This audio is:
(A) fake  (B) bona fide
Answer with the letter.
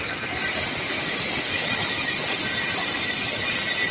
B